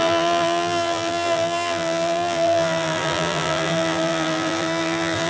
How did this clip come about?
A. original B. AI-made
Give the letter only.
B